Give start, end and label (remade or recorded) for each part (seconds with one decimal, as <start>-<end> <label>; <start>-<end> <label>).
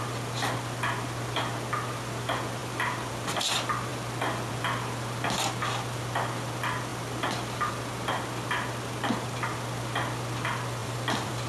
0.0-10.8 recorded; 10.8-11.5 remade